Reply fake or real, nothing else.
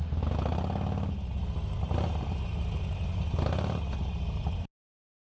real